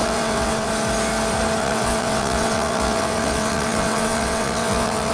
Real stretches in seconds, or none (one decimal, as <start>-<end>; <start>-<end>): 0.7-1.6

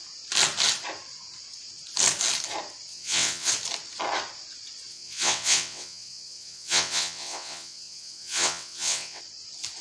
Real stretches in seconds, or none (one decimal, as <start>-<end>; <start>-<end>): 0.0-2.9; 3.5-4.9; 9.2-9.8

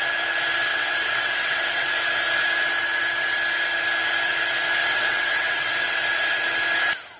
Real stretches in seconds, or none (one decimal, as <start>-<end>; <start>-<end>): 0.0-0.7; 1.9-4.8; 6.0-7.2

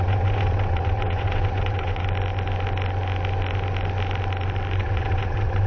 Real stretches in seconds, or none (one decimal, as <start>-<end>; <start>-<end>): 2.0-4.8

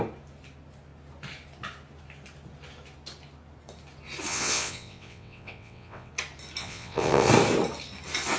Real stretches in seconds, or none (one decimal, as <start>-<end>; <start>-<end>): 0.0-4.3; 6.1-6.6; 7.3-8.4

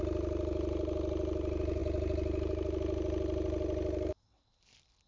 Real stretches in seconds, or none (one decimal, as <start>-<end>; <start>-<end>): 0.0-5.1